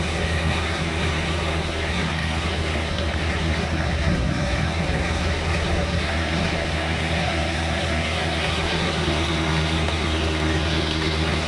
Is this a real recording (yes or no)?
no